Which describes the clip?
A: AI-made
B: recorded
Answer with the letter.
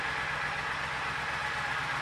B